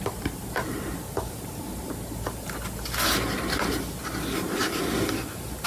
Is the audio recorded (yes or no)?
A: yes